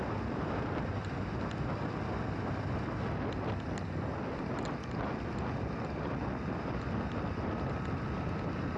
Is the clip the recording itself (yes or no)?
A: yes